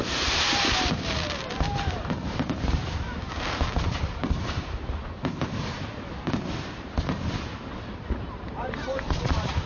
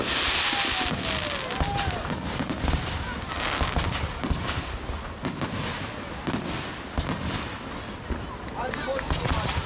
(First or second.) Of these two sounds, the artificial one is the first